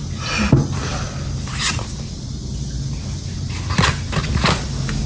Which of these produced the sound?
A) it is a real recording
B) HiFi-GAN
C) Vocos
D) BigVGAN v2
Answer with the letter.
A